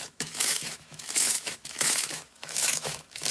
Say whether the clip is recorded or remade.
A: remade